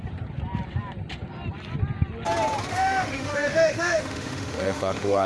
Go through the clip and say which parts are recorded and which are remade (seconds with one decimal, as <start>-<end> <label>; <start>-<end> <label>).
0.0-2.7 recorded; 2.7-5.3 remade